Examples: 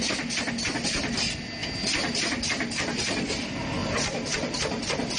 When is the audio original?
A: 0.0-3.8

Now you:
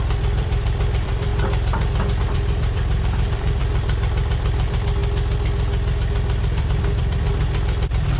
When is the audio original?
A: 1.3-2.2; 5.0-6.6

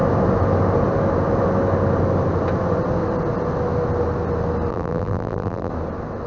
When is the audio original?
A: 0.0-4.7; 5.7-6.3

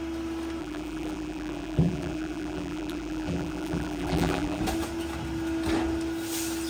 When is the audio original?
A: 0.0-0.6; 4.6-6.7

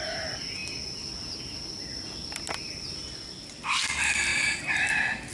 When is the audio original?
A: 0.0-5.3